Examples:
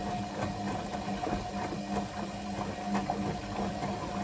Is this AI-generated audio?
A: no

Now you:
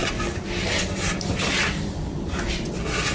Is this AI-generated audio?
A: no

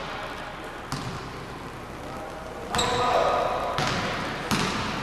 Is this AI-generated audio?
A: no